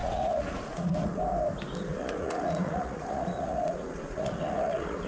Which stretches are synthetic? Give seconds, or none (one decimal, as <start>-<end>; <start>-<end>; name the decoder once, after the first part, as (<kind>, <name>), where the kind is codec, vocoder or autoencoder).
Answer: 0.0-1.2 (vocoder, Vocos); 1.9-5.1